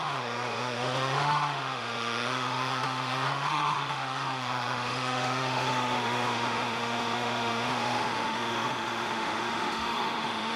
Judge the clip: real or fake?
fake